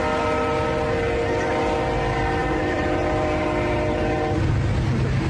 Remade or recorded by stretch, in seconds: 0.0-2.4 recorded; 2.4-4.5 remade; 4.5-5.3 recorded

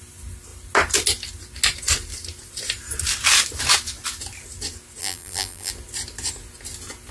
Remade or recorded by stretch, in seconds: 0.0-5.0 recorded; 5.0-5.7 remade; 5.7-7.1 recorded

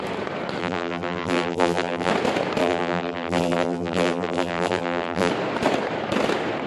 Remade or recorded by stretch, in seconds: 0.0-0.6 recorded; 0.6-2.1 remade; 2.1-2.6 recorded; 2.6-5.3 remade; 5.3-6.7 recorded

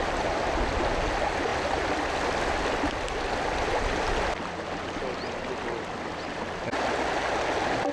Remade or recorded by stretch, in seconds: 0.0-7.9 recorded